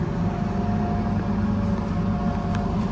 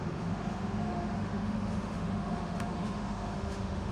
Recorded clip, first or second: first